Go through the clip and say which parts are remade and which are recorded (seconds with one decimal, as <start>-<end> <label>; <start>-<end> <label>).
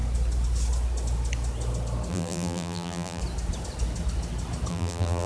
0.0-2.1 recorded; 2.1-3.2 remade; 3.2-4.7 recorded; 4.7-5.3 remade